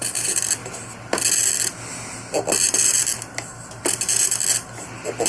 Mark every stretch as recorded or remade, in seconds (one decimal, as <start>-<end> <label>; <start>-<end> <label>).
0.0-5.3 recorded